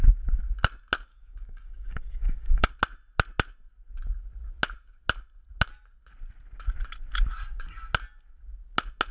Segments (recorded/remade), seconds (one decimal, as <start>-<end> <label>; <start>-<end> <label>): 0.0-1.1 recorded; 1.1-2.7 remade; 2.7-9.1 recorded